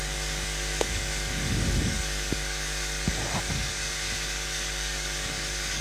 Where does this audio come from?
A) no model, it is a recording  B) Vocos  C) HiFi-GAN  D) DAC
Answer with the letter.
D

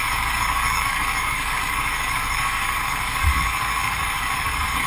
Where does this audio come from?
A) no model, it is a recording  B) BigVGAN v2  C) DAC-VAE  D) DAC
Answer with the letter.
D